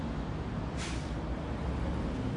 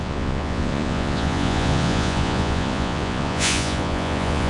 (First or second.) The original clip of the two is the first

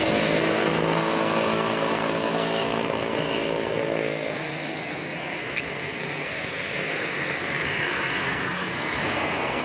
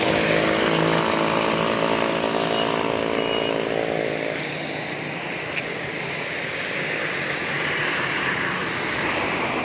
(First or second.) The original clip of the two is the second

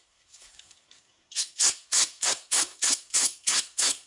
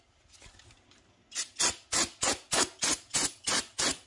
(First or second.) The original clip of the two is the second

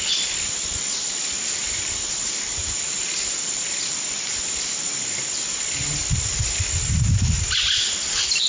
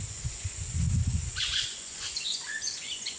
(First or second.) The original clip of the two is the first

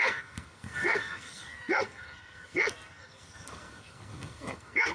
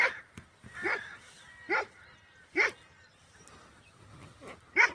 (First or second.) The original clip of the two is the second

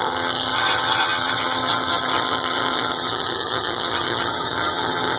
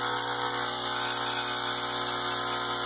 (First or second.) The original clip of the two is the second